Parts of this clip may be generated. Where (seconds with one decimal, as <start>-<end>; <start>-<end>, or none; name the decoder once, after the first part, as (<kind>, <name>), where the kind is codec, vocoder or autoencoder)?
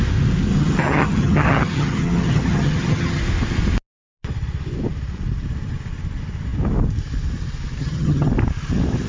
0.5-3.2 (vocoder, HiFi-GAN); 7.8-8.3